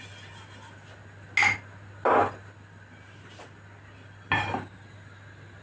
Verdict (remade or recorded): recorded